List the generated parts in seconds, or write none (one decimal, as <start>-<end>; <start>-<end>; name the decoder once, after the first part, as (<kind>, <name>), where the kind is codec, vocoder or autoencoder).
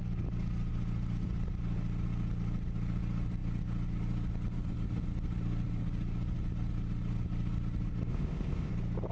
8.1-8.7 (codec, ZipCodec)